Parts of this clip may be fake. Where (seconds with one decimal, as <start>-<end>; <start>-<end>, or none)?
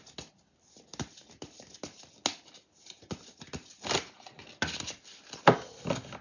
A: none